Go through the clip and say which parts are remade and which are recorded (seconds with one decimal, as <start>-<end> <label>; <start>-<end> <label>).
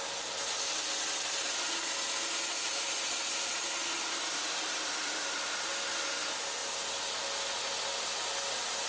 0.0-8.9 recorded